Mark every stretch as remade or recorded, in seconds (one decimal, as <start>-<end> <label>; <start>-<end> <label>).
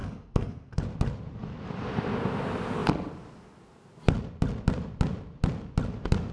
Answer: 0.0-0.8 remade; 0.8-6.3 recorded